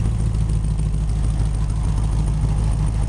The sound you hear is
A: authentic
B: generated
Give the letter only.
A